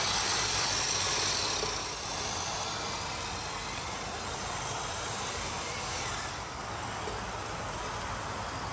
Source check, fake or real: real